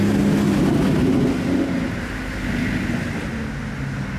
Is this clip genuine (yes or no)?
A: yes